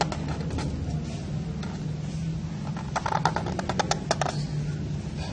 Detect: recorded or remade recorded